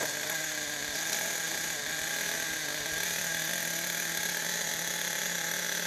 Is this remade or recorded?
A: recorded